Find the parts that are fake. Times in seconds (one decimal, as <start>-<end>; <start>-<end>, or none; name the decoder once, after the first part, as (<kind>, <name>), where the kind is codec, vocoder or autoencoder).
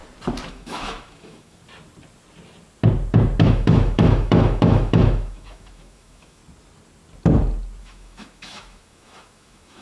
0.5-1.6 (autoencoder, DAC-VAE); 3.4-6.4; 7.8-9.8